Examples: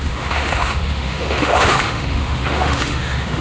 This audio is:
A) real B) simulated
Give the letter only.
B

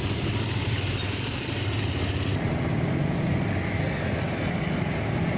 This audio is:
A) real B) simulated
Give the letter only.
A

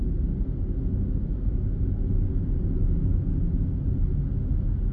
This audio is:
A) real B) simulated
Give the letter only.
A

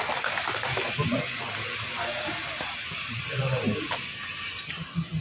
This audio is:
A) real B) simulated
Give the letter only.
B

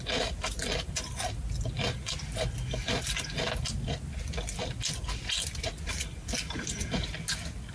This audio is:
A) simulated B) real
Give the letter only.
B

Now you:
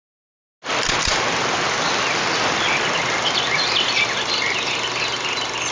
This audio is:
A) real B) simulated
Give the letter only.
A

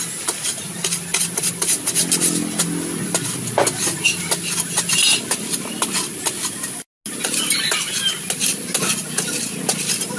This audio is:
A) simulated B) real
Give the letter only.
B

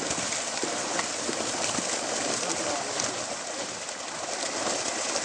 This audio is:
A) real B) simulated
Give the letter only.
A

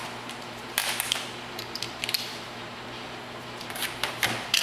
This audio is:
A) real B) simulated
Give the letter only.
B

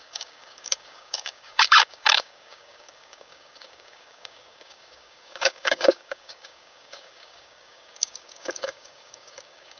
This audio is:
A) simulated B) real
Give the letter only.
A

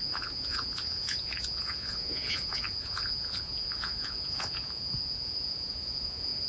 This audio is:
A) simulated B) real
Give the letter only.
A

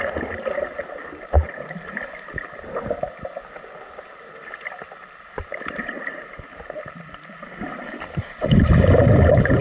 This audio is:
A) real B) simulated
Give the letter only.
A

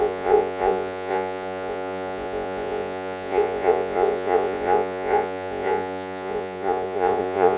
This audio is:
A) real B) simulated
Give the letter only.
B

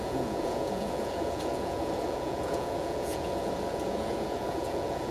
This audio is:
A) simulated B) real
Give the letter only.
A